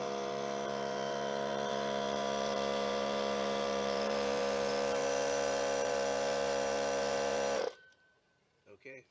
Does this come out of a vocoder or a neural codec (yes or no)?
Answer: yes